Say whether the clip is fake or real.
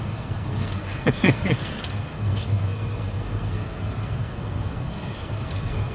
fake